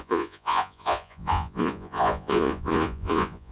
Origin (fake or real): fake